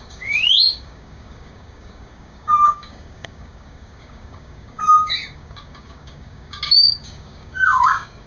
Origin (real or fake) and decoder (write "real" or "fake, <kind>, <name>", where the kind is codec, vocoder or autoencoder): fake, codec, DAC